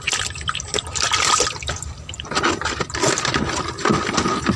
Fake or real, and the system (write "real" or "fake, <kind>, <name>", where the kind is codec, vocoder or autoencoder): real